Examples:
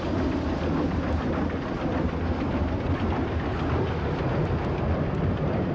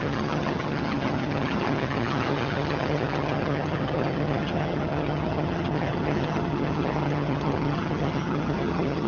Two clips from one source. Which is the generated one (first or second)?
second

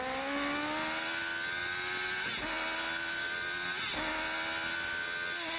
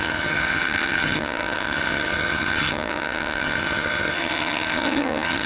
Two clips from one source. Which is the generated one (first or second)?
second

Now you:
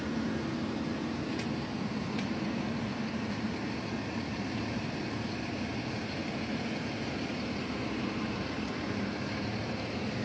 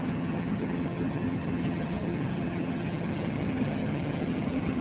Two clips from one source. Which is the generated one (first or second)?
second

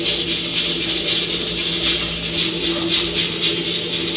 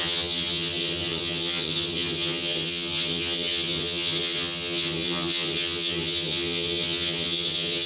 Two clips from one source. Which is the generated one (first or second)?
second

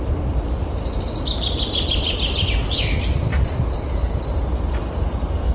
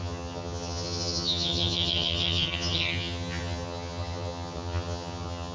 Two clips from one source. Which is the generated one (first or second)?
second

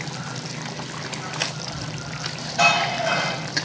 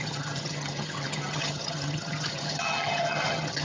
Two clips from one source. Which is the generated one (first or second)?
second